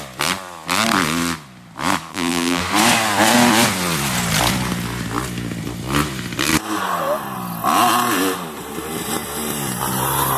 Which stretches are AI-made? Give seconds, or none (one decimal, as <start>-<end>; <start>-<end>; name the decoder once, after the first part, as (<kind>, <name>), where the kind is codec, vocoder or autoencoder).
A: 2.1-2.6 (vocoder, BigVGAN v2)